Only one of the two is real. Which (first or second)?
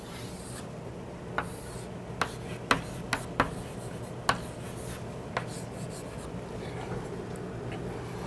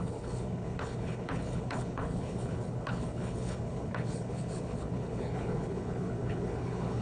first